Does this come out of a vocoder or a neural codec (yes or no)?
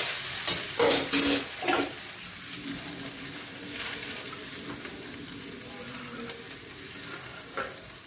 no